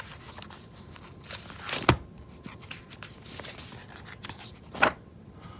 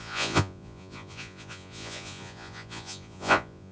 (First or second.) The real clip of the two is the first